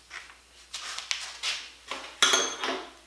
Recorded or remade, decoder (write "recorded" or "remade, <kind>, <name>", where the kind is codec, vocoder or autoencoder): recorded